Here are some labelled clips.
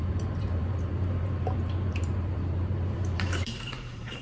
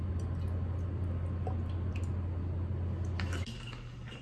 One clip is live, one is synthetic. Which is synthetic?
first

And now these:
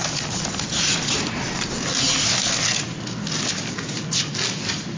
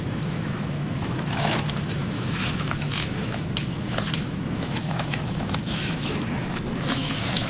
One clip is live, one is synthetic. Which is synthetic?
second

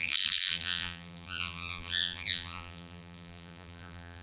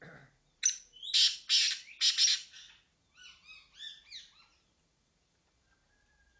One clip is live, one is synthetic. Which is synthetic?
first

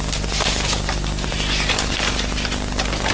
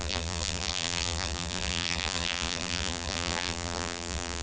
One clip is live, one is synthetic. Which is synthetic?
second